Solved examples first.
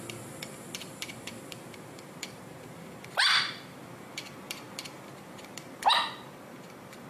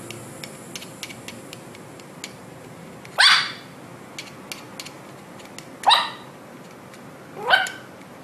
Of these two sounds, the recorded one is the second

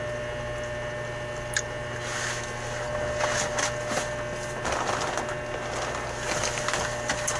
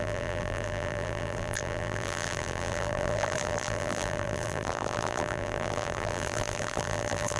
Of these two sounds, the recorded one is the first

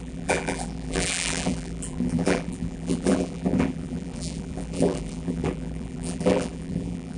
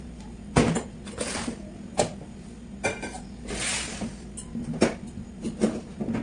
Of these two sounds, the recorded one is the second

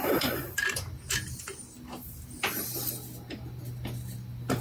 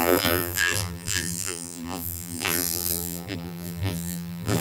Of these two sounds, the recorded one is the first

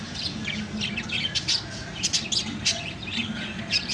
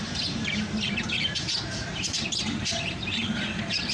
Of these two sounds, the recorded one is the first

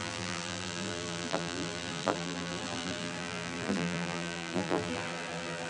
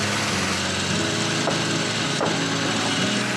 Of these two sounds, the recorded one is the second